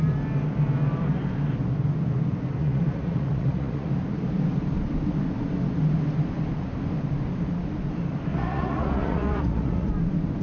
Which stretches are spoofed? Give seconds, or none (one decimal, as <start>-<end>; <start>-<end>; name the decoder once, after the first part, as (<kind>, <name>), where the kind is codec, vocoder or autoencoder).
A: 2.6-3.9 (vocoder, Vocos); 8.3-9.9